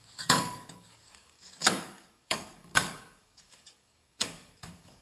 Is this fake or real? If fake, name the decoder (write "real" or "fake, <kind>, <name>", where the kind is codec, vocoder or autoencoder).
fake, codec, DAC